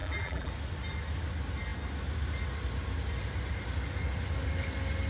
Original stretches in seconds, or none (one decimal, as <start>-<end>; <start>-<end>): 0.5-5.1